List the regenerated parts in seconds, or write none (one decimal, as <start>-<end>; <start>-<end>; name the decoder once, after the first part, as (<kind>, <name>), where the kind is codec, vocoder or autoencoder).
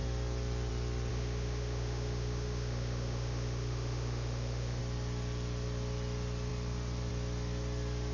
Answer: 1.1-4.8 (autoencoder, DAC-VAE)